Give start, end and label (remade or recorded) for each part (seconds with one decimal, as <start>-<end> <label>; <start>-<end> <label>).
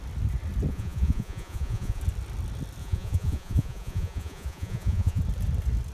0.0-0.7 recorded; 0.7-2.0 remade; 2.0-2.8 recorded; 2.8-5.2 remade; 5.2-5.9 recorded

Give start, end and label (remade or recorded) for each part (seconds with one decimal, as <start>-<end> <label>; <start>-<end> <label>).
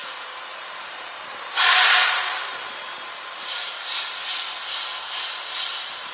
0.0-3.7 remade; 3.7-6.1 recorded